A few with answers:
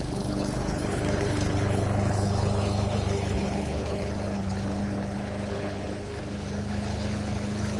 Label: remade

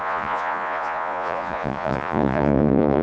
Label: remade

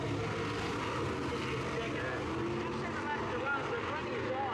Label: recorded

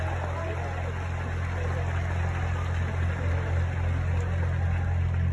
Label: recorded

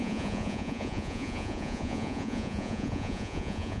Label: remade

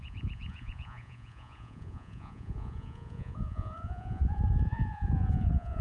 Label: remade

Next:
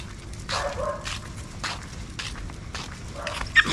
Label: recorded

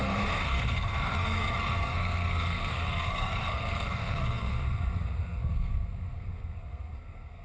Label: remade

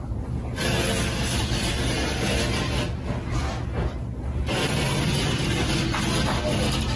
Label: recorded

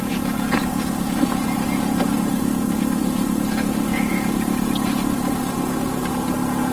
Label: remade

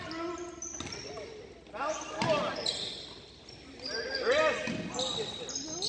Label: recorded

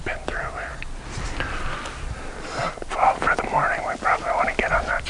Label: recorded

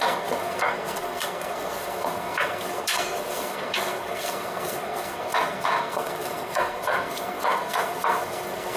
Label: remade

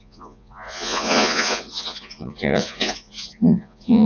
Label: remade